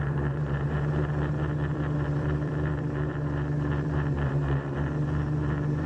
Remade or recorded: remade